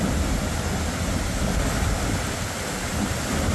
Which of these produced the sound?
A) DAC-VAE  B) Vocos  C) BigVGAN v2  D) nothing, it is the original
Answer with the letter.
D